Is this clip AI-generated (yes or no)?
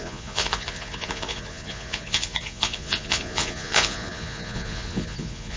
yes